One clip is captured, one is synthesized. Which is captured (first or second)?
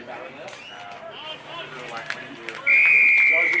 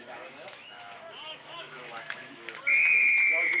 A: first